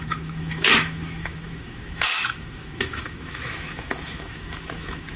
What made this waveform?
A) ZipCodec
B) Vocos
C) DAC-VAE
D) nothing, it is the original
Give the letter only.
C